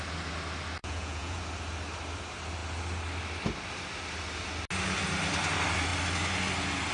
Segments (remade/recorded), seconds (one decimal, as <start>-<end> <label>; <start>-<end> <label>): 0.0-0.8 recorded; 0.8-1.4 remade; 1.4-6.9 recorded